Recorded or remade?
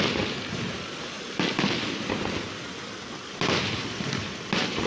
recorded